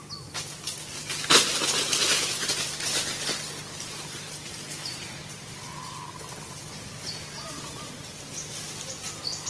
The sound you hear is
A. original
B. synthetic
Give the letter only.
A